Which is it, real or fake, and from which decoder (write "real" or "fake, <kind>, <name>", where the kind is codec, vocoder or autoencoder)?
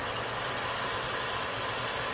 real